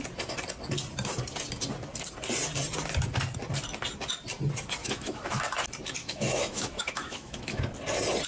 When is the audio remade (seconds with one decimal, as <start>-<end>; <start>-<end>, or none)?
4.8-5.4; 6.0-7.6